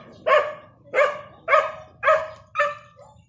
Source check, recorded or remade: recorded